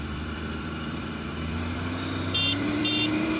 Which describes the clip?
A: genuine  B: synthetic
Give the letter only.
B